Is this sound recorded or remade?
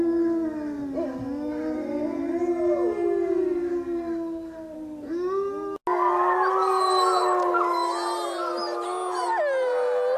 recorded